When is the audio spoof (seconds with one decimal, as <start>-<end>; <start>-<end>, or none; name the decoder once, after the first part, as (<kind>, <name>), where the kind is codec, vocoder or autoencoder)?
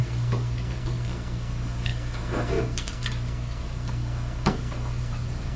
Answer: 0.0-5.6 (codec, SNAC)